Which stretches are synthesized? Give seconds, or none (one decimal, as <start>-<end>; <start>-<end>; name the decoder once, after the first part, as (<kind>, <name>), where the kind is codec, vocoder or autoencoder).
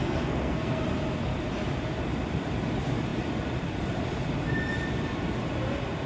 0.0-0.8 (codec, SNAC)